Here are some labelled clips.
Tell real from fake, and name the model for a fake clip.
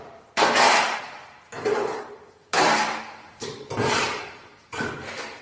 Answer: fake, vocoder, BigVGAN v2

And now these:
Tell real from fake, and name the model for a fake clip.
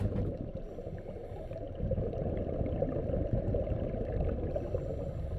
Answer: real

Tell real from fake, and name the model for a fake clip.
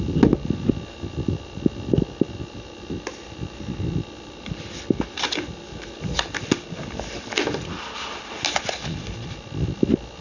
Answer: real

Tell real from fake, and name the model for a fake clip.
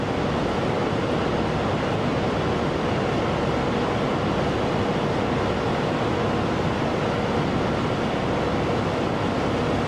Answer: real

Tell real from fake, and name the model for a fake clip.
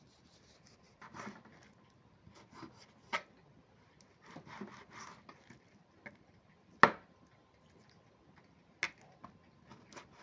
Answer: real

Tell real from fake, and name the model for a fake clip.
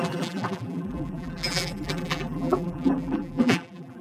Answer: fake, vocoder, BigVGAN v2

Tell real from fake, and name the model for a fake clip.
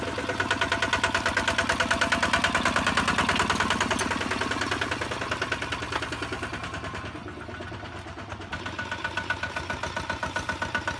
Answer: real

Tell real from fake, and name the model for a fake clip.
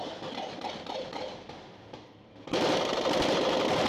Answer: fake, vocoder, BigVGAN v2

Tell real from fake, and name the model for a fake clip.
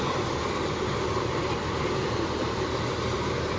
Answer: fake, vocoder, BigVGAN v2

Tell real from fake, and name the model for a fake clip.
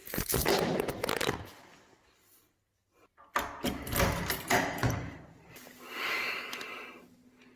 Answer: real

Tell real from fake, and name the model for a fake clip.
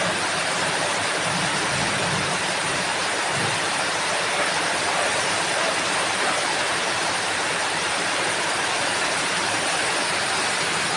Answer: fake, vocoder, BigVGAN v2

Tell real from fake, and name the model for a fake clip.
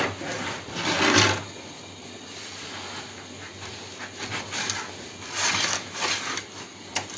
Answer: real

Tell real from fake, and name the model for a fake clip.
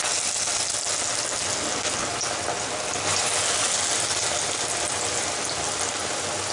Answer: real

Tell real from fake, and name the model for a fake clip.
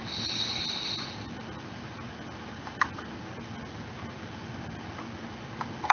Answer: real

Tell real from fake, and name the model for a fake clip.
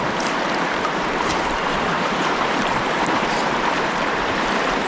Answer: fake, vocoder, BigVGAN v2